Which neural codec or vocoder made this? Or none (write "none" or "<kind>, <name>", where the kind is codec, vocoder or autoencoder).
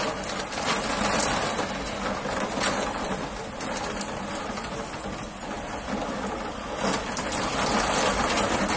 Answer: none